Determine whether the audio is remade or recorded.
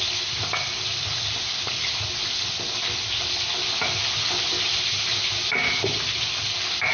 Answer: recorded